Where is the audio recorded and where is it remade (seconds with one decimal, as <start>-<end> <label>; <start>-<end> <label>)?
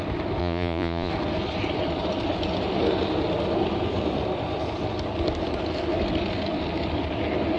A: 0.0-0.4 recorded; 0.4-1.1 remade; 1.1-7.6 recorded